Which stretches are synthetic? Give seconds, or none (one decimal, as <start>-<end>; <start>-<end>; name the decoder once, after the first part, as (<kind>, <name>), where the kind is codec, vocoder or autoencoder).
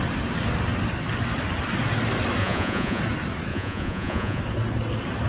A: 2.4-3.0 (vocoder, Vocos); 3.5-4.4